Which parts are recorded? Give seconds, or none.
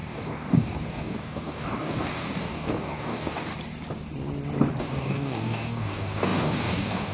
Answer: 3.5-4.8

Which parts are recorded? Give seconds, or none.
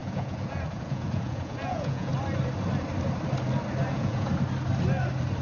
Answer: 2.1-3.9; 4.3-5.4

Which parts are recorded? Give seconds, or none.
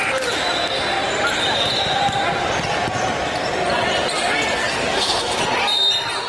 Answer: 0.0-4.6; 5.4-6.3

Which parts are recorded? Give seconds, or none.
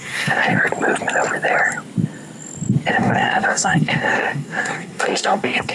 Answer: 0.5-2.9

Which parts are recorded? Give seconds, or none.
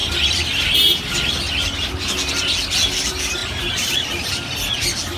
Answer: 0.0-3.4; 4.3-5.2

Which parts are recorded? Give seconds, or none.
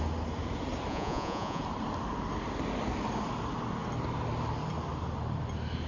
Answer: 0.0-0.9; 1.6-5.9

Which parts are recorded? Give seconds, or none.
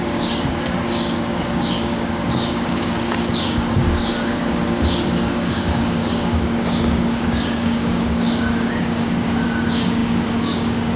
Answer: none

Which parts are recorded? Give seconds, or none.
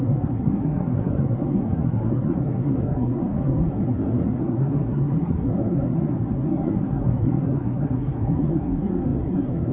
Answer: none